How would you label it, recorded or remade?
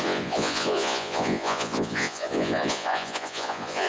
remade